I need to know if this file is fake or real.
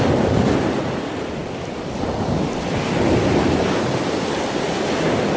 real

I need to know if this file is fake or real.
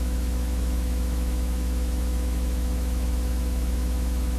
fake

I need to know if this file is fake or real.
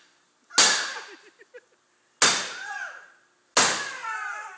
real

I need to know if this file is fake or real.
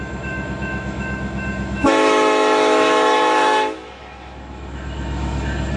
fake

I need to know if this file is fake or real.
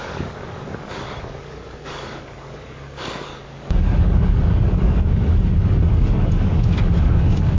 fake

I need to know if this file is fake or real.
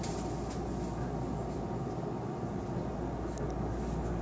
real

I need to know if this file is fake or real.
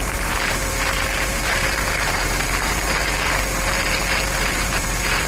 fake